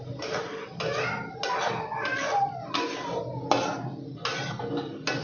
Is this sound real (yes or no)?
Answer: yes